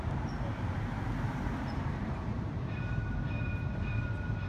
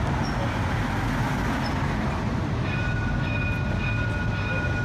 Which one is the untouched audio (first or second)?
second